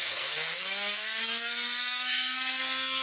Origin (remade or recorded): remade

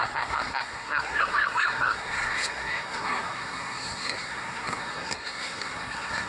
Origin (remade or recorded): remade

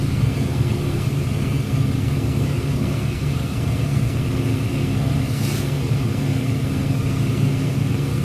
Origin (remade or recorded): remade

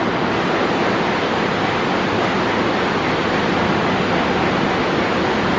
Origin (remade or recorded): recorded